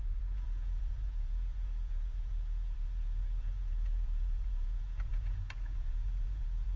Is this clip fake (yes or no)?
yes